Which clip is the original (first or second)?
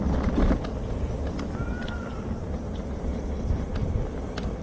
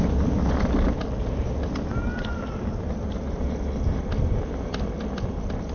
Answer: second